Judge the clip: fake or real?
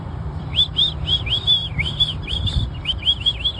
fake